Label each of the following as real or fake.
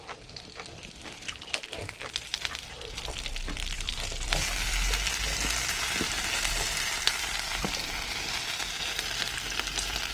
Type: fake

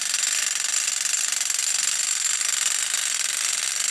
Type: real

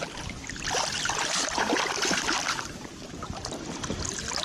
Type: fake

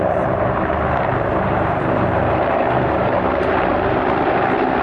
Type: fake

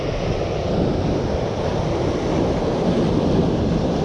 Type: real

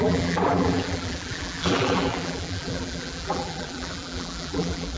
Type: fake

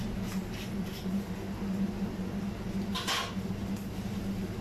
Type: real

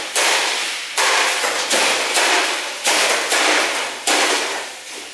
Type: fake